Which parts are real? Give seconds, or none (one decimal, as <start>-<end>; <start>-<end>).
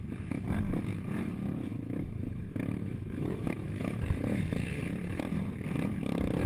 0.0-1.7; 4.4-6.5